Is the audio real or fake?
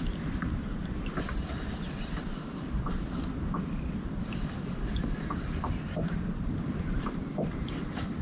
real